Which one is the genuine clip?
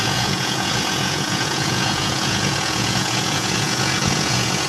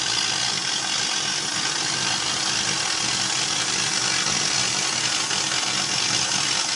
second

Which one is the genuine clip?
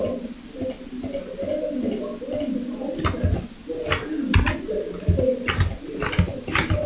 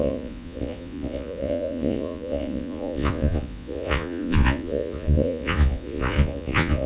first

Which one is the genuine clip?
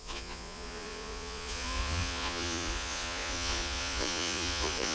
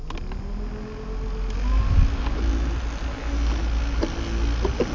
second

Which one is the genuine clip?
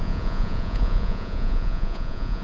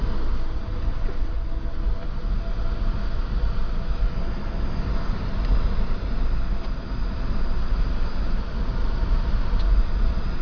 second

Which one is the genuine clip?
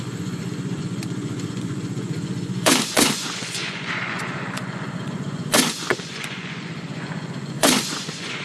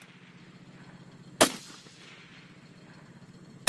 second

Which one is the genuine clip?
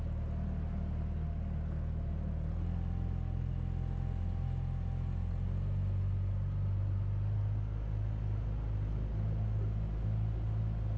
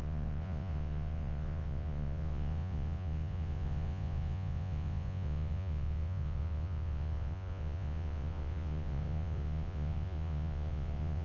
first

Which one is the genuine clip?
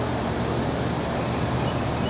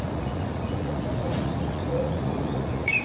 first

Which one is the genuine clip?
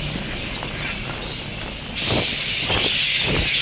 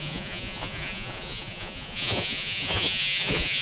first